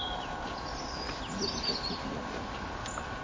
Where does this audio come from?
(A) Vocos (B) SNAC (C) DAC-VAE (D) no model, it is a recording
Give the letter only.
D